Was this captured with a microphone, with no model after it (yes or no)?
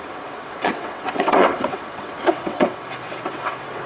no